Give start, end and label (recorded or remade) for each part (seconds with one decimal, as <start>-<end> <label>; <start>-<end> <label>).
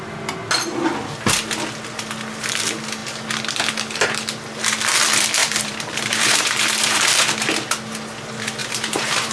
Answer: 0.0-5.4 recorded; 5.4-7.0 remade; 7.0-8.6 recorded; 8.6-9.3 remade